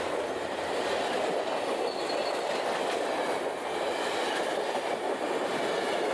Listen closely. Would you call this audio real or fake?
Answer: real